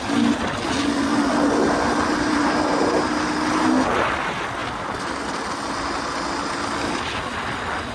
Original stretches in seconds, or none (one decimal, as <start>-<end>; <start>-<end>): 0.0-1.6; 3.6-7.9